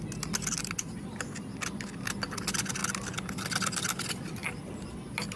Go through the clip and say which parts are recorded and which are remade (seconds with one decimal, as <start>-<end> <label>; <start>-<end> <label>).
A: 0.0-5.4 recorded